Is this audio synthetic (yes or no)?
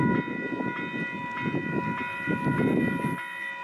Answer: no